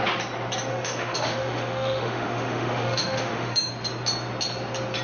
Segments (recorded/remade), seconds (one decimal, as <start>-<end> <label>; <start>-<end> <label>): 0.0-0.7 recorded; 0.7-3.7 remade; 3.7-5.0 recorded